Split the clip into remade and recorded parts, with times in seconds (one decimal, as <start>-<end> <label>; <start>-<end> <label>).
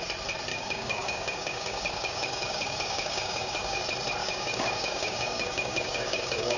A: 0.0-0.5 recorded; 0.5-3.8 remade; 3.8-4.2 recorded; 4.2-6.6 remade